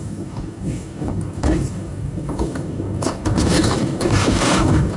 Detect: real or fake fake